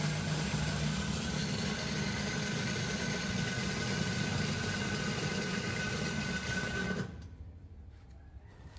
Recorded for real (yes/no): yes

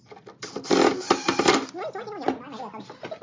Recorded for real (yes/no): yes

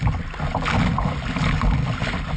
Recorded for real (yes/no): yes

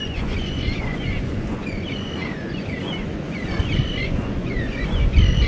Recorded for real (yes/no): no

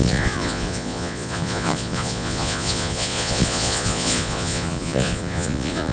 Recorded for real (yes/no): no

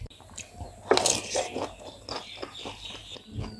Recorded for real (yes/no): yes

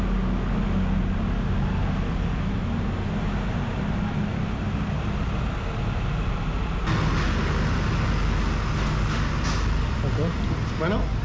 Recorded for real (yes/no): yes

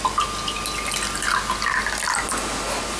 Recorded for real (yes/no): yes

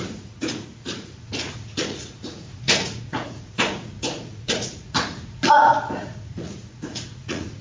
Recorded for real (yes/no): no